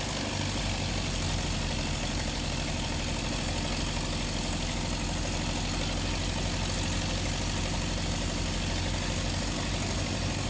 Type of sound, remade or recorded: recorded